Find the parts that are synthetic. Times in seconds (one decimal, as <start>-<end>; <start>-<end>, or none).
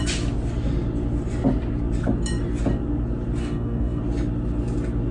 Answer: 3.4-4.0